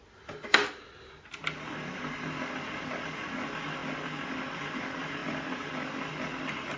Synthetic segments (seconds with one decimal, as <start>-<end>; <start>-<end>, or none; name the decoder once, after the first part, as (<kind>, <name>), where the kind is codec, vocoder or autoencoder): none